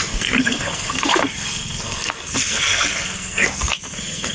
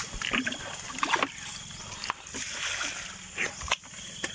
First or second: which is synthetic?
first